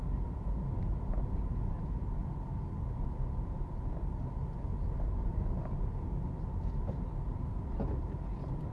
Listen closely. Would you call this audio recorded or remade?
recorded